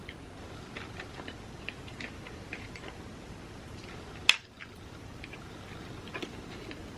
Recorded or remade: remade